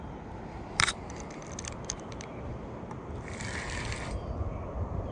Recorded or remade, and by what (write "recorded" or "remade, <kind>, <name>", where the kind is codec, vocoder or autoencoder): recorded